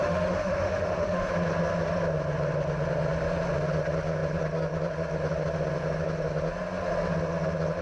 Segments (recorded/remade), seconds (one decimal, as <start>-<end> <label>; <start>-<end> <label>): 0.0-1.3 remade; 1.3-7.8 recorded